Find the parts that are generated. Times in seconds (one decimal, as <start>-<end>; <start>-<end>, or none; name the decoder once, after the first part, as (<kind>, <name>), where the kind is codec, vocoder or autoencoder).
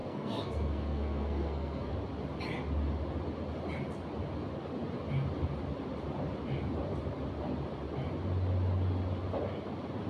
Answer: 0.0-1.9 (codec, SNAC)